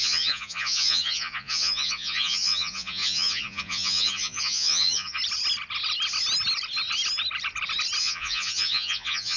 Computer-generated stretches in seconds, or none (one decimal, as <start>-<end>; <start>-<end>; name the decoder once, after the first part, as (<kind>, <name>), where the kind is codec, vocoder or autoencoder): 0.0-5.2 (vocoder, Vocos); 8.0-9.4